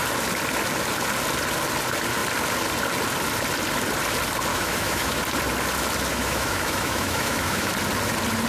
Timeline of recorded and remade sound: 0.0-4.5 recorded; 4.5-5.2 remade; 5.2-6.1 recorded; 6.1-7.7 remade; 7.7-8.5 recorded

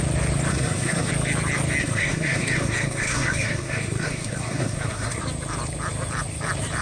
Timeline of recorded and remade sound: 0.0-0.5 recorded; 0.5-1.1 remade; 1.1-1.8 recorded; 1.8-5.2 remade; 5.2-6.8 recorded

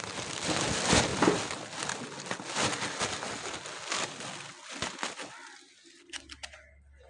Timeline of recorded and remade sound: 0.0-7.1 recorded

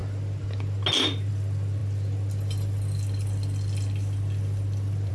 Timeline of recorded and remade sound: 0.0-5.1 recorded

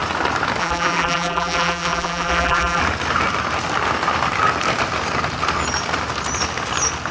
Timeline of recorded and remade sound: 0.0-0.6 recorded; 0.6-2.8 remade; 2.8-7.1 recorded

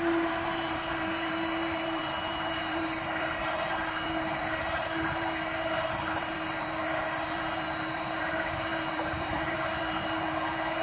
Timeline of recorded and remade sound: 0.0-10.8 remade